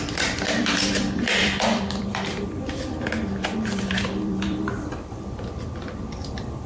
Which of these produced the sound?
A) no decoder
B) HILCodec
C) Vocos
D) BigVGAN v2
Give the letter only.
D